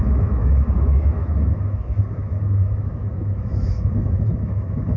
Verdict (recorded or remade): remade